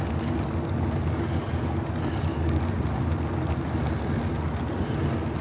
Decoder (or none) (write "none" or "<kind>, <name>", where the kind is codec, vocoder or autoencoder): none